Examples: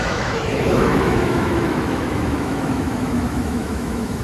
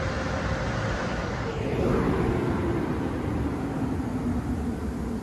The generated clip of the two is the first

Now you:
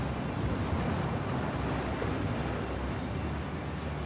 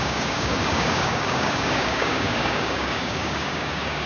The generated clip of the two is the second